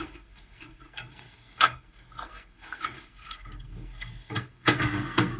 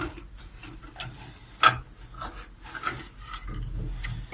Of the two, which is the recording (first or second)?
second